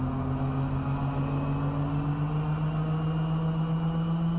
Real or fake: real